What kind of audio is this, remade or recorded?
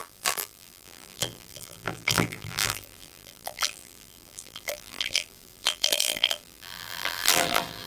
remade